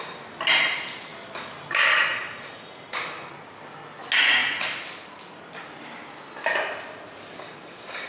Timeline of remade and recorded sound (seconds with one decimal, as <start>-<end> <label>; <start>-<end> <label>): 0.0-8.1 recorded